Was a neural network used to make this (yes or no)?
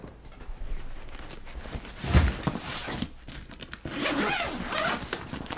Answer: no